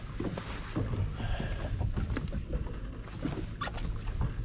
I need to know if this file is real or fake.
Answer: real